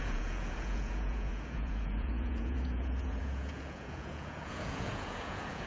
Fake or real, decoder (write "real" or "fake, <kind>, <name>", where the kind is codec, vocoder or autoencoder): fake, vocoder, Vocos